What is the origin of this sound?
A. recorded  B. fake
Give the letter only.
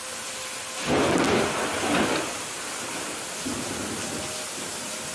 A